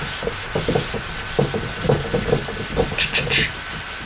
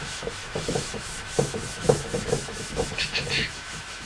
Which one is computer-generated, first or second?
second